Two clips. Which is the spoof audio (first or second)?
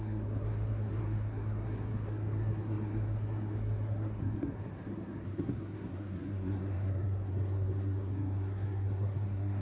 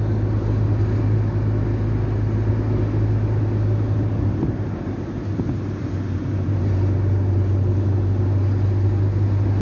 first